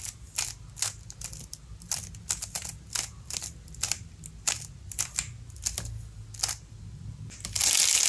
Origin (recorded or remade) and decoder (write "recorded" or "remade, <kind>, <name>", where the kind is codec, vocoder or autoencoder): recorded